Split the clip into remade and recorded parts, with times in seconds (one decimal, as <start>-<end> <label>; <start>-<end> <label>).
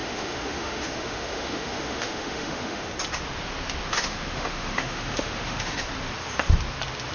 0.0-2.9 remade; 2.9-3.9 recorded; 3.9-5.8 remade; 5.8-7.1 recorded